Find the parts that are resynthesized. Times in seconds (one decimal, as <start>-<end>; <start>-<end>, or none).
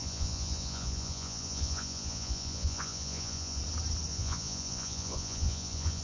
0.0-3.6; 4.1-6.0